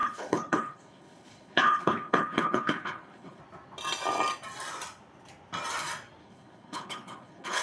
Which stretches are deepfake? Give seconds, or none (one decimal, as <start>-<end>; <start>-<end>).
0.0-3.4; 6.2-7.6